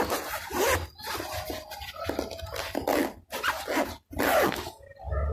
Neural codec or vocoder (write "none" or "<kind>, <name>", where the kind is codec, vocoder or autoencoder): none